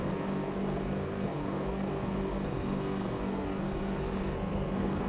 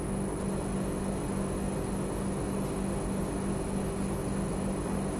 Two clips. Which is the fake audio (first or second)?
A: first